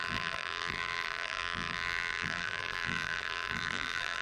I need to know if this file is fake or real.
fake